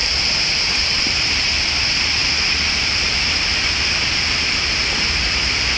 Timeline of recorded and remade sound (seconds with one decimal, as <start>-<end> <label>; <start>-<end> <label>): 0.0-1.0 recorded; 1.0-5.8 remade